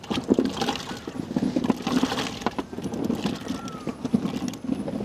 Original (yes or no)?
yes